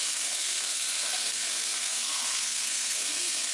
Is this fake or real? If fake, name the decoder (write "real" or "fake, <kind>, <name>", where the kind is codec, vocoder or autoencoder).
fake, codec, SNAC